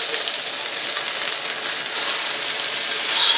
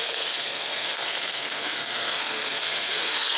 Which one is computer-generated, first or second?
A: second